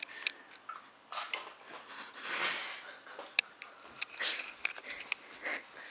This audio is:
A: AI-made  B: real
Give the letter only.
B